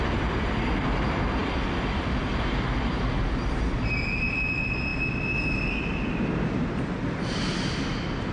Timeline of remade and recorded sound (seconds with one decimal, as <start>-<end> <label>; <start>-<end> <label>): 0.0-1.4 recorded; 1.4-3.1 remade; 3.1-8.3 recorded